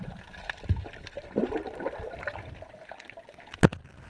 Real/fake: real